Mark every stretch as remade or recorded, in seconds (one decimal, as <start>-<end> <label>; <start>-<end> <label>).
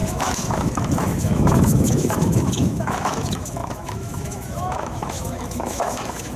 0.0-6.4 remade